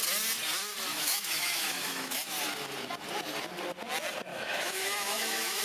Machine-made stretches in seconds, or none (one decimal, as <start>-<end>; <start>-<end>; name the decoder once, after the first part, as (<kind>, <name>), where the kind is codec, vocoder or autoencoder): 0.9-2.2 (autoencoder, DAC-VAE); 4.3-5.6